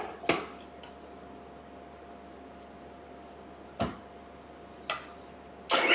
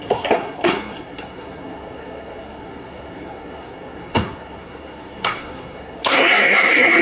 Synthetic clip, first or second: second